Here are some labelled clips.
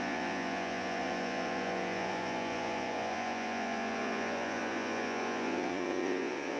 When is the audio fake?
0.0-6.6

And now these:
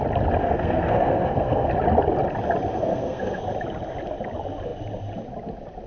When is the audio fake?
0.4-1.7; 2.7-3.4

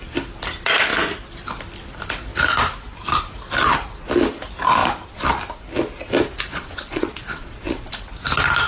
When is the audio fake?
6.5-7.9

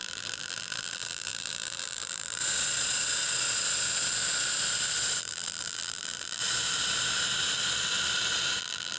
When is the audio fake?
0.0-2.4; 5.2-6.4; 8.6-9.0